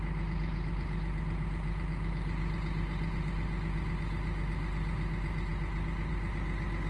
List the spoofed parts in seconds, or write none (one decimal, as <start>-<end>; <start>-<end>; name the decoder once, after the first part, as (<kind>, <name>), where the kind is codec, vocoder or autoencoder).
none